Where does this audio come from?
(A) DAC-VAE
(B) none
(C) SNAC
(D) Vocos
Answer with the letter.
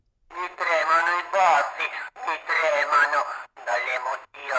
D